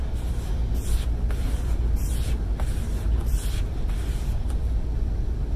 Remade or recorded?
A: recorded